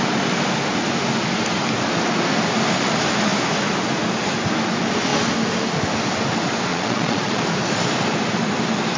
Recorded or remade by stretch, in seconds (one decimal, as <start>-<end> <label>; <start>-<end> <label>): 0.0-6.7 recorded; 6.7-7.4 remade; 7.4-9.0 recorded

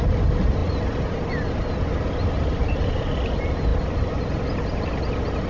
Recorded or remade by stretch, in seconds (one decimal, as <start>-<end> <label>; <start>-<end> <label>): 0.0-5.5 recorded

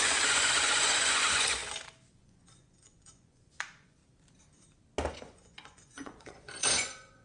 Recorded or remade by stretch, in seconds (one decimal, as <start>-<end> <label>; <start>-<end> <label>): 0.0-1.6 remade; 1.6-2.1 recorded; 2.1-4.0 remade; 4.0-5.1 recorded; 5.1-7.2 remade

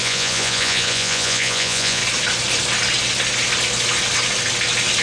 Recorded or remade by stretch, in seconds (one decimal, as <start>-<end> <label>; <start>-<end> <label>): 0.0-2.0 remade; 2.0-5.0 recorded

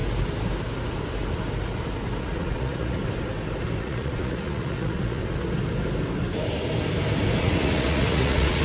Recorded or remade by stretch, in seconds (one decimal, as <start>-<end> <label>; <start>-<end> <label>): 0.0-2.2 recorded; 2.2-3.0 remade; 3.0-3.8 recorded; 3.8-5.2 remade; 5.2-7.4 recorded; 7.4-8.6 remade